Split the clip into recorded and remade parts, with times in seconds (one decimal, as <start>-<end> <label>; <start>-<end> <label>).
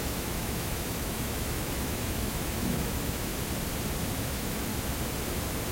0.0-3.3 remade; 3.3-4.1 recorded; 4.1-4.7 remade; 4.7-5.7 recorded